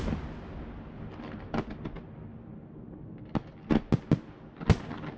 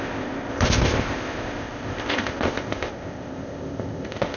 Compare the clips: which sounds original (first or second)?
first